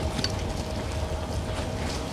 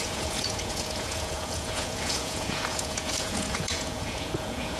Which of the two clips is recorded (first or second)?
first